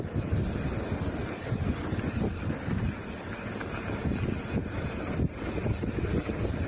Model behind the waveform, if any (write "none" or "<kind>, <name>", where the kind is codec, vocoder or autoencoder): none